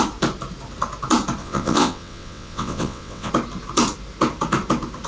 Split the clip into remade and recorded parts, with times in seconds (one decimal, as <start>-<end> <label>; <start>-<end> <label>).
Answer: 0.0-1.4 recorded; 1.4-3.3 remade; 3.3-5.1 recorded